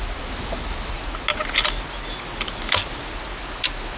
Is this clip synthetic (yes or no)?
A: no